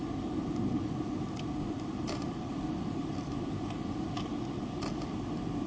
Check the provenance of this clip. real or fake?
real